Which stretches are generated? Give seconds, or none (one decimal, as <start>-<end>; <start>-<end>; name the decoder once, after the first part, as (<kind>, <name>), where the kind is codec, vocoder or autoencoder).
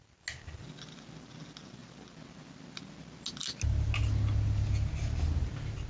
none